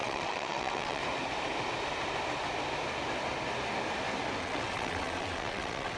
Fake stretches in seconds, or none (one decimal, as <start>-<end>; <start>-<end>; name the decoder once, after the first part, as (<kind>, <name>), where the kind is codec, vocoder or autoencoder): 0.0-1.0 (vocoder, WaveNeXt); 4.4-6.0